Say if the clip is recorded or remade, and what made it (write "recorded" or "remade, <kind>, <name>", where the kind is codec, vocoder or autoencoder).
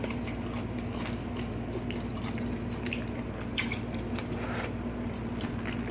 remade, vocoder, BigVGAN v2